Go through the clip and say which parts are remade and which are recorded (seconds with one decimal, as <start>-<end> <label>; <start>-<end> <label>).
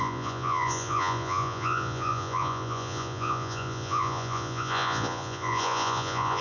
0.0-6.4 remade